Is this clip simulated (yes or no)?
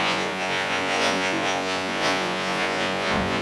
yes